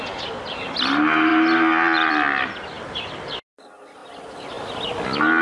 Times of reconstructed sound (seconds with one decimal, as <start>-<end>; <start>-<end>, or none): none